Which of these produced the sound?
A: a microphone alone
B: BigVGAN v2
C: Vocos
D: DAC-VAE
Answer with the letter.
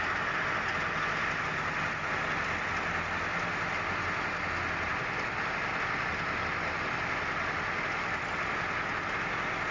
A